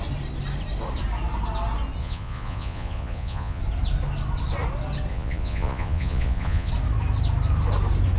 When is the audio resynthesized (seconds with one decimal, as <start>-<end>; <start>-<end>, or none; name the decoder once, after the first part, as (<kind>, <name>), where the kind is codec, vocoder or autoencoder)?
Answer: 2.0-3.6 (vocoder, Vocos); 5.1-6.7